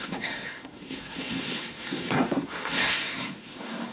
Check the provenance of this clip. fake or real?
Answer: fake